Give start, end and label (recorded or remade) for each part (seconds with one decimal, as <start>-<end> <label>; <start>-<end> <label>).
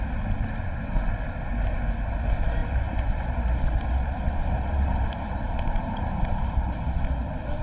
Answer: 0.0-2.6 recorded; 2.6-7.6 remade